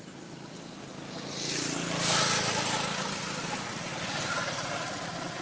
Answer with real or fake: real